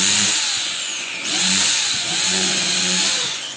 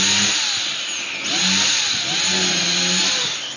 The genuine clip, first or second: second